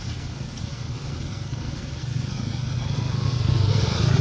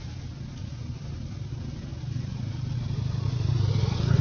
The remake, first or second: first